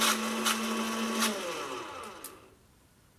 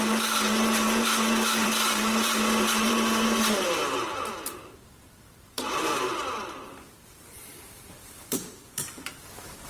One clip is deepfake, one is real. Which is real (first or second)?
first